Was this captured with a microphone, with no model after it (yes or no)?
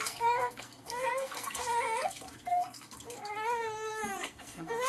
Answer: no